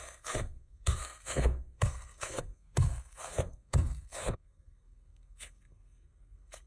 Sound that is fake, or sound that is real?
fake